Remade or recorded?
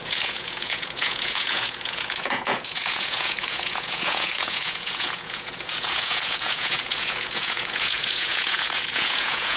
remade